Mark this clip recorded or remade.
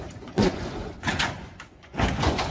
remade